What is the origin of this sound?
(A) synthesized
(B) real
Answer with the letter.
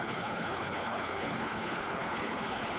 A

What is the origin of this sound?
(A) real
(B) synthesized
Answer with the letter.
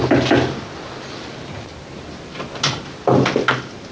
A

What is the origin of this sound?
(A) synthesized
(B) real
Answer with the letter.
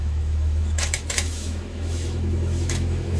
A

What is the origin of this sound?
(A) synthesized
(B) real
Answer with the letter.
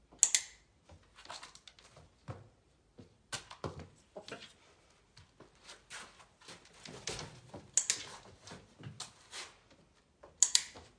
B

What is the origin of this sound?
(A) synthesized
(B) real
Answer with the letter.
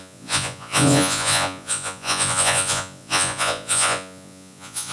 A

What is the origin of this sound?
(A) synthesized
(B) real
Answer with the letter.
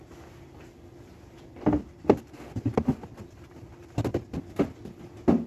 B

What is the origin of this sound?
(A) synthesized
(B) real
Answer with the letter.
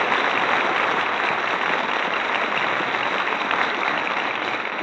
B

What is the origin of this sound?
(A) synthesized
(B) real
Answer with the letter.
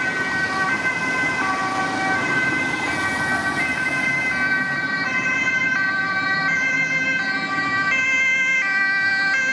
B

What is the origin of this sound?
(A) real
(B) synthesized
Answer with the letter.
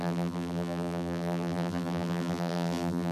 B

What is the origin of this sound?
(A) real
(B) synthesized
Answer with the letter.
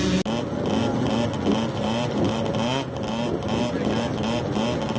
A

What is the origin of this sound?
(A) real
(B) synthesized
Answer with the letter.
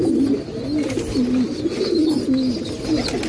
A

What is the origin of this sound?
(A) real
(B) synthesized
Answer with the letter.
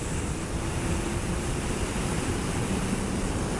B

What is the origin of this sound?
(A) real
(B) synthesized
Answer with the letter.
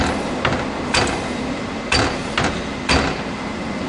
A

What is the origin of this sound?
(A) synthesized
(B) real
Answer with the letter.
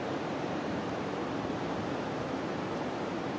A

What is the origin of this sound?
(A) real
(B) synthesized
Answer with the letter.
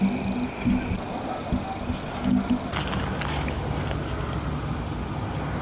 A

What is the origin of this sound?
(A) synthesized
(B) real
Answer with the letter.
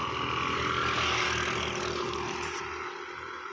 B